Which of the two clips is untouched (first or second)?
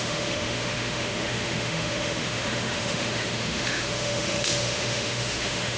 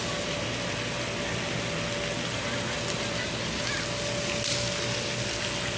second